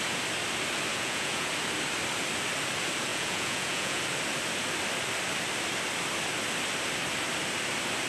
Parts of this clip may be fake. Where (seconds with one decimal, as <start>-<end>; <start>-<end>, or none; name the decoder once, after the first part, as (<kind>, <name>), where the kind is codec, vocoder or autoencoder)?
0.9-1.5 (vocoder, Vocos); 3.1-4.0